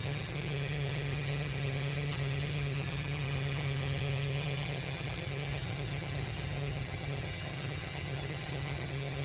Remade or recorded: remade